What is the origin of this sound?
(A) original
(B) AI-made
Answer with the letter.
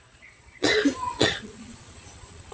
B